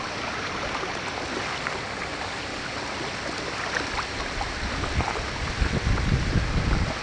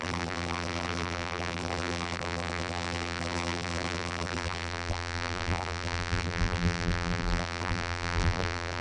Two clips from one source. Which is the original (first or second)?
first